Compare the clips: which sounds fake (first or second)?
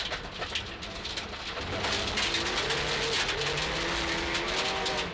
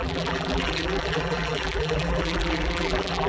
second